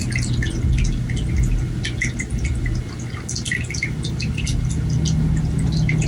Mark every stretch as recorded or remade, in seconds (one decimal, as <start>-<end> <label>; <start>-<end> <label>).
0.0-6.1 recorded